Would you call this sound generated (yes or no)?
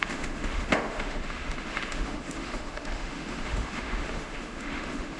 yes